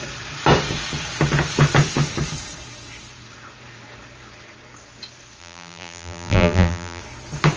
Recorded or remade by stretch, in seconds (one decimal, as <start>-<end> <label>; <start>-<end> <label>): 0.0-5.4 recorded; 5.4-7.0 remade; 7.0-7.6 recorded